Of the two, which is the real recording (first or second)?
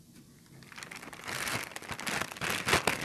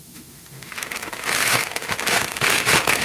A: first